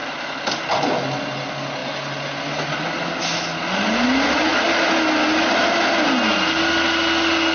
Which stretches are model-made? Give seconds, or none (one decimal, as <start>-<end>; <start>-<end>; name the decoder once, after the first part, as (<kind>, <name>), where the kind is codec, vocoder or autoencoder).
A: none